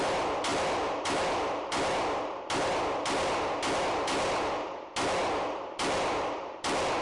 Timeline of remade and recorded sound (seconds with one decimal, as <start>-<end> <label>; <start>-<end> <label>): 0.0-7.0 recorded